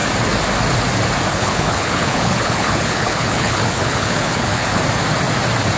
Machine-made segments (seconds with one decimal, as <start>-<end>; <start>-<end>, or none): 1.3-4.8